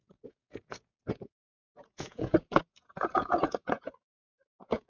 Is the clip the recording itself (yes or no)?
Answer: no